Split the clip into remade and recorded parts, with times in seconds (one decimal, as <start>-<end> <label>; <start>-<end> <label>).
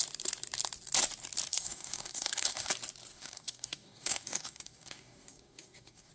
0.0-1.5 recorded; 1.5-2.7 remade; 2.7-3.1 recorded; 3.1-6.1 remade